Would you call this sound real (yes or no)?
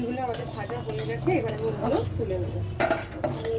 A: yes